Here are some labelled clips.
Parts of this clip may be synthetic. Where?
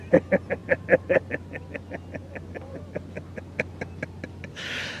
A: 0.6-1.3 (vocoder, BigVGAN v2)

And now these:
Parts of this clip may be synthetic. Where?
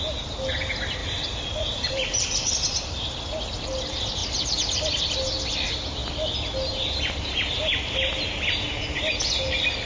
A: 1.0-2.5 (vocoder, BigVGAN v2)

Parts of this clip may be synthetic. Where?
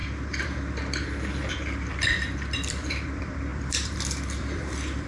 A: 0.0-5.1 (vocoder, BigVGAN v2)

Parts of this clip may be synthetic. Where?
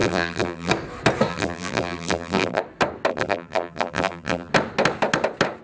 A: 0.0-0.7 (vocoder, BigVGAN v2); 1.3-2.6; 3.1-4.5